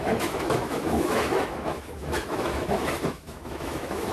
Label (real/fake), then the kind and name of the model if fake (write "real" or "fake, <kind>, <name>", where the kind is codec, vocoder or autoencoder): fake, autoencoder, DAC-VAE